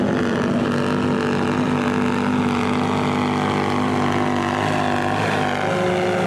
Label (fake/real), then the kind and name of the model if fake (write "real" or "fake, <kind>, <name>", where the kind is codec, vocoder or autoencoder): real